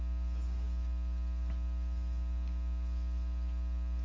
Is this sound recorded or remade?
recorded